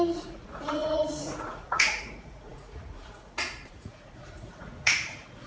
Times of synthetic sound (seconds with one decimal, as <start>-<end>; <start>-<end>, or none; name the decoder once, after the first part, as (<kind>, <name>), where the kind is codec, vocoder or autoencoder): 0.0-5.5 (vocoder, Vocos)